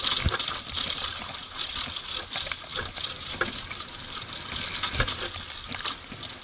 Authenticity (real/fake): real